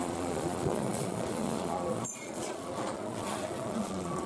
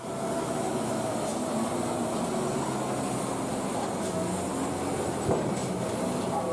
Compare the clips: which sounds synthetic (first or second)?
first